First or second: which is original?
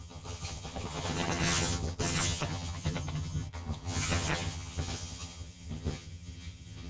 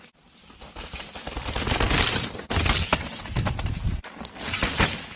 second